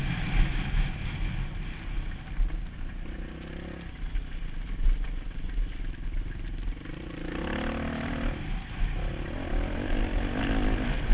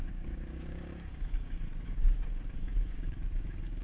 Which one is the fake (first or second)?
second